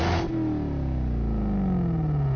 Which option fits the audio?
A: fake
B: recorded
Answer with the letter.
B